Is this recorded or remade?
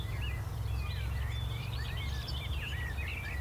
recorded